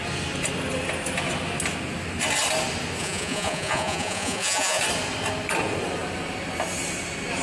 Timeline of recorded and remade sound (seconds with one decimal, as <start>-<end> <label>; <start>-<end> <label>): 0.0-3.0 recorded; 3.0-4.8 remade; 4.8-7.4 recorded